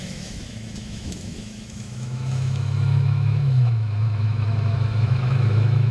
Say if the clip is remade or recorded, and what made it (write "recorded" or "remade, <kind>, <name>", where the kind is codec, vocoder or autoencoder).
remade, autoencoder, DAC-VAE